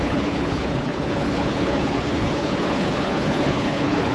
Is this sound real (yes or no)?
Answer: no